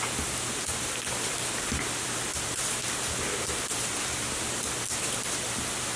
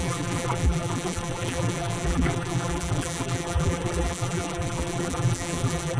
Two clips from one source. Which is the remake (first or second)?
second